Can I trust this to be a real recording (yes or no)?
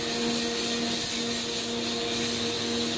yes